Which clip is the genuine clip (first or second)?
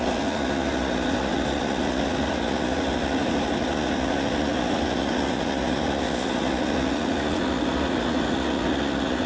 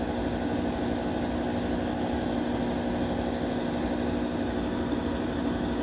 second